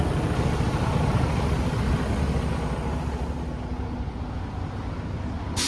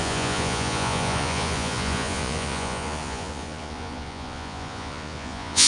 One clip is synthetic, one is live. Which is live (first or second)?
first